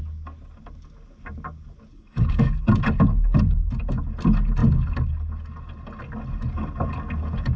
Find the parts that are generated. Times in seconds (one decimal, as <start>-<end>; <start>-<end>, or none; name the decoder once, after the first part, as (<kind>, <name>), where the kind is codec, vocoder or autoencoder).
1.9-2.7 (codec, DAC)